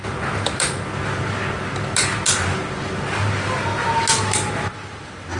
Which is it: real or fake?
real